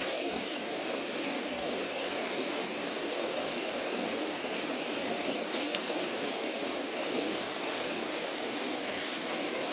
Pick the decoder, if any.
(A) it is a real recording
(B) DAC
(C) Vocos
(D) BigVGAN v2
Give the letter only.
B